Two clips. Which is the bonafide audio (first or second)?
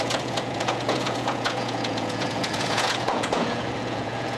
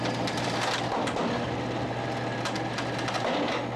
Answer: second